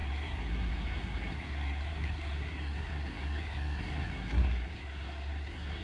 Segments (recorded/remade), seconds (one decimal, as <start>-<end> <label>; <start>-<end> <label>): 0.0-5.8 remade